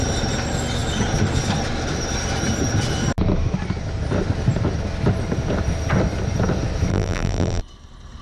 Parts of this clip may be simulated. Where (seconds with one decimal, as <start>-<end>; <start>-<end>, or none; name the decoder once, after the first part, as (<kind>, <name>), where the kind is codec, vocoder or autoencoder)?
6.9-7.6 (vocoder, BigVGAN v2)